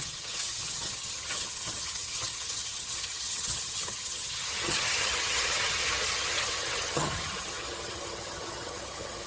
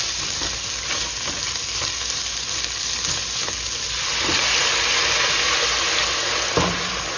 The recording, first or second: second